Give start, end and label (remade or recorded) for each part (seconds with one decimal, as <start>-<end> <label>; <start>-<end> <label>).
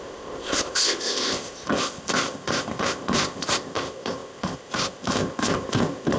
0.0-6.2 remade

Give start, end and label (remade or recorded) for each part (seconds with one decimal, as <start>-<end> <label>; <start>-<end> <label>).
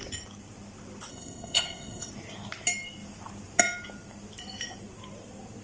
0.0-1.1 recorded; 1.1-2.1 remade; 2.1-5.6 recorded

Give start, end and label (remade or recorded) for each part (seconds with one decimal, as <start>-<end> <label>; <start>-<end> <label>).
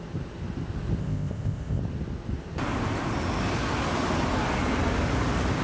0.0-1.0 recorded; 1.0-1.8 remade; 1.8-5.6 recorded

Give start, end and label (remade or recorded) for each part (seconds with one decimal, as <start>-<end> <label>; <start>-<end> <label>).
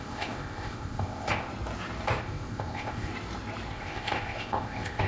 0.0-1.5 remade; 1.5-2.2 recorded; 2.2-3.1 remade; 3.1-3.7 recorded; 3.7-5.1 remade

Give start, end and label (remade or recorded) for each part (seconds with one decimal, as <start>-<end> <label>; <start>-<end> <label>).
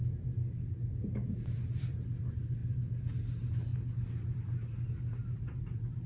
0.0-6.1 recorded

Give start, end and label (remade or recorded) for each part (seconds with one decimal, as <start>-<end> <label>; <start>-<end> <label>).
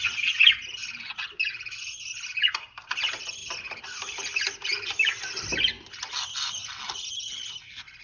0.0-8.0 recorded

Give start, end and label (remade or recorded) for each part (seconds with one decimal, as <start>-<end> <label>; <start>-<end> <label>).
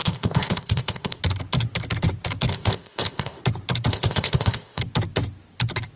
0.0-1.2 remade; 1.2-2.5 recorded; 2.5-3.4 remade; 3.4-3.9 recorded; 3.9-4.8 remade; 4.8-6.0 recorded